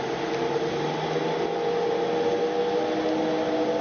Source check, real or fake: real